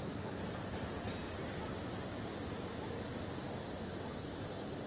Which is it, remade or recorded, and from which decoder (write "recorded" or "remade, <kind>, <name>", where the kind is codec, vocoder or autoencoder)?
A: recorded